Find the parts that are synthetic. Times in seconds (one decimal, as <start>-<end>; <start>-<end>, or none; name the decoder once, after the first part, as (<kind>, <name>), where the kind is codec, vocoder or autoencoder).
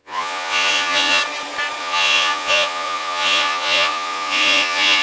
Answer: 0.0-1.2 (vocoder, Vocos); 1.8-5.0